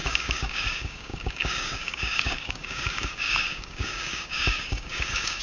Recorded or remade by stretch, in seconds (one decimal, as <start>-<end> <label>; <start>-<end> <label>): 0.0-5.4 remade